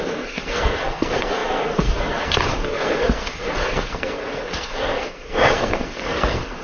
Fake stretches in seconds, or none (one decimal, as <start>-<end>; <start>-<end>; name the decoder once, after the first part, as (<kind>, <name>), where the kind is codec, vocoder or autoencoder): 0.0-6.6 (codec, SNAC)